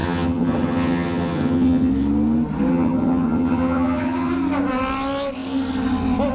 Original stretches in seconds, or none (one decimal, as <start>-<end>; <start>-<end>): 1.9-2.7; 4.3-6.3